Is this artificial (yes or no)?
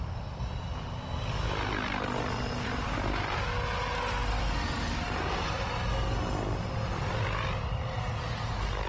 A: no